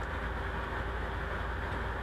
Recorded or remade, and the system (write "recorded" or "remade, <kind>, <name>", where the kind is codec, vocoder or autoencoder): recorded